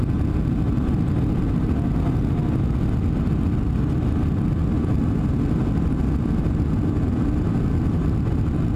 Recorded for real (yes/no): yes